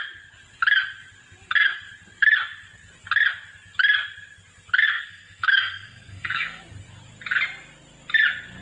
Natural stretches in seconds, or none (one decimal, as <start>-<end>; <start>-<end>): 0.0-4.9; 6.6-8.6